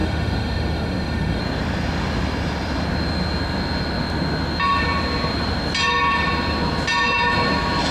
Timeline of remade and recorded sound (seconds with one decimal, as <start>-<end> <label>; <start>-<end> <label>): 0.0-1.4 remade; 1.4-7.9 recorded

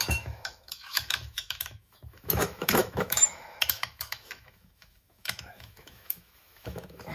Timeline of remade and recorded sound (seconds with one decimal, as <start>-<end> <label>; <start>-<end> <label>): 0.0-7.1 remade

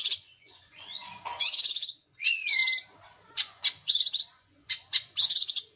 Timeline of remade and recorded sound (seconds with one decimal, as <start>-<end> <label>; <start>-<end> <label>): 0.0-2.6 remade; 2.6-3.3 recorded; 3.3-5.8 remade